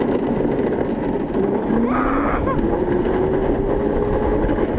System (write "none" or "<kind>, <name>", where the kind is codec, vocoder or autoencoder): none